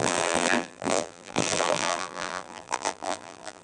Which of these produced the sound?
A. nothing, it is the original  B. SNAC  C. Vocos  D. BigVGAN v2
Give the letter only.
D